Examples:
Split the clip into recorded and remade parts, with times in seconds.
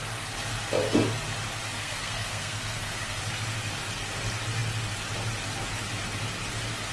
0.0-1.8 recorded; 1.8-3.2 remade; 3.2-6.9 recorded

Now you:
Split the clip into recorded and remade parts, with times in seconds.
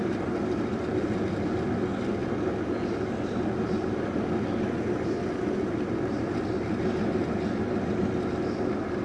0.0-9.0 recorded